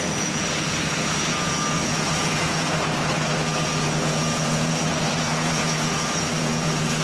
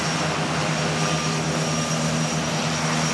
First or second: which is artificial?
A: first